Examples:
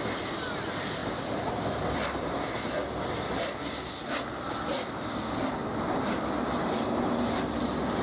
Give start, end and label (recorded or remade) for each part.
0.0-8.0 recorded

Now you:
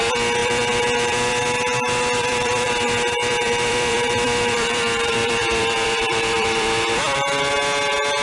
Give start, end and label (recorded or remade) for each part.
0.0-0.4 recorded; 0.4-1.3 remade; 1.3-2.2 recorded; 2.2-2.7 remade; 2.7-3.2 recorded; 3.2-7.5 remade; 7.5-8.2 recorded

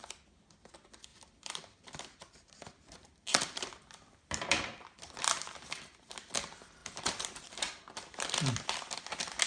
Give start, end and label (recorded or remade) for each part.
0.0-1.1 recorded; 1.1-5.8 remade; 5.8-6.8 recorded; 6.8-7.6 remade; 7.6-9.5 recorded

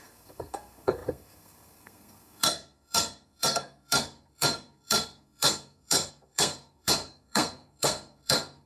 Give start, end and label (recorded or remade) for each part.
0.0-8.7 remade

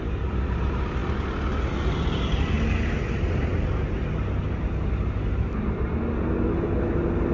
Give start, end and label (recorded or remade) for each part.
0.0-7.3 recorded

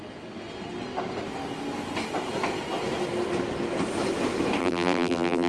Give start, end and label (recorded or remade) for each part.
0.0-4.6 recorded; 4.6-5.5 remade

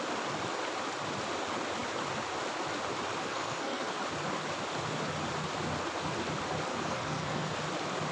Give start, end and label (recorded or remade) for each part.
0.0-3.2 recorded; 3.2-4.0 remade; 4.0-6.7 recorded; 6.7-7.6 remade; 7.6-8.1 recorded

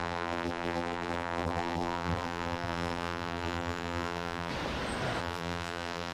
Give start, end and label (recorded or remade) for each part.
0.0-4.5 remade; 4.5-5.2 recorded; 5.2-6.1 remade